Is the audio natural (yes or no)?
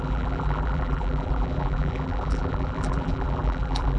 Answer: no